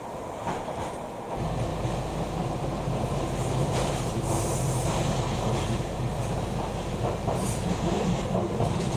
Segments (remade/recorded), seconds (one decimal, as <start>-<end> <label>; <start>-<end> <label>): 0.0-1.7 remade; 1.7-2.4 recorded; 2.4-4.5 remade; 4.5-7.3 recorded; 7.3-9.0 remade